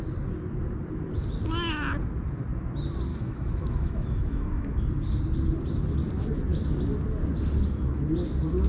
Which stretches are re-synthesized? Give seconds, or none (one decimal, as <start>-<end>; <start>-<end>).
3.1-4.8